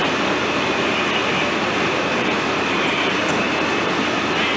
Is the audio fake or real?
real